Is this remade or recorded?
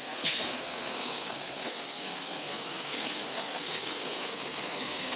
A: remade